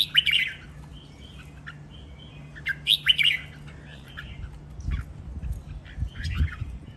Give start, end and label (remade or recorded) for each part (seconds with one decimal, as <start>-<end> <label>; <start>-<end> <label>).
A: 0.0-3.9 recorded; 3.9-4.4 remade; 4.4-6.1 recorded; 6.1-7.0 remade